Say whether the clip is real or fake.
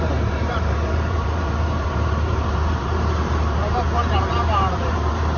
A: fake